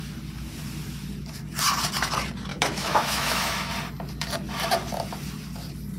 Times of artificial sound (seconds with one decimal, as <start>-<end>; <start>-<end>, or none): 2.5-3.7